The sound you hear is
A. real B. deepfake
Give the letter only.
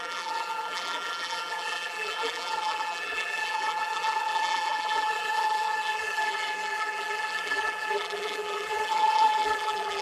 B